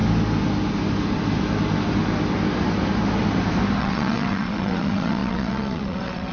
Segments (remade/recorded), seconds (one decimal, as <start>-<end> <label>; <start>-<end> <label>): 0.0-3.8 recorded; 3.8-6.3 remade